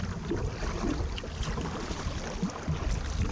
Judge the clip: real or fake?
real